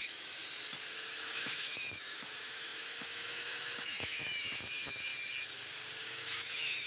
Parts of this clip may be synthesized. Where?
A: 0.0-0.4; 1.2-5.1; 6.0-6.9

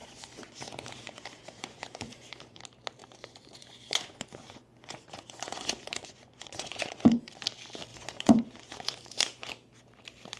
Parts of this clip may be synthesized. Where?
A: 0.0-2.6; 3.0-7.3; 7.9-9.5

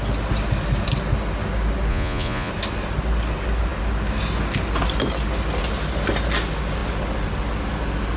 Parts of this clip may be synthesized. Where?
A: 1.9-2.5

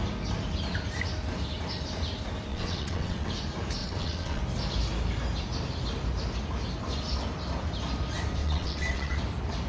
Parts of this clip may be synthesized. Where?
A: 2.5-3.3; 3.8-4.4; 8.4-9.2

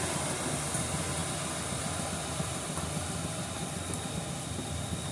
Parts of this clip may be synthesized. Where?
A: none